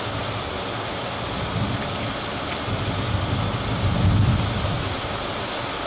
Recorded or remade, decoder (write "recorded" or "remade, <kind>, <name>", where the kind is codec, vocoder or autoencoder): recorded